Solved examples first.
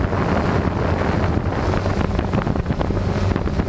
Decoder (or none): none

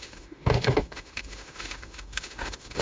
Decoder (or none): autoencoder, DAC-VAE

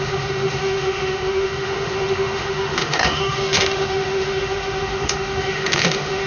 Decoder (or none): autoencoder, DAC-VAE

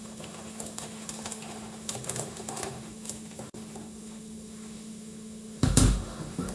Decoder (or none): autoencoder, DAC-VAE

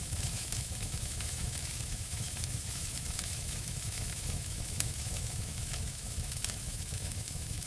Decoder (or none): autoencoder, DAC-VAE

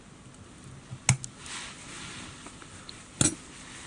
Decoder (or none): none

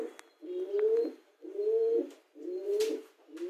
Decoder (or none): none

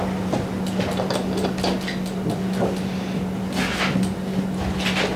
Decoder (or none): none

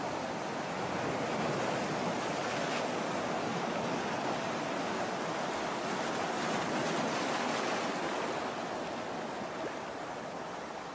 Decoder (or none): none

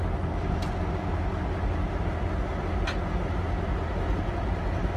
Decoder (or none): none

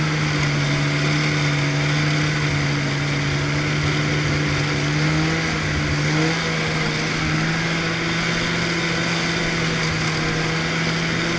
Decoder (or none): none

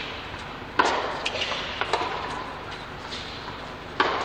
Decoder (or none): none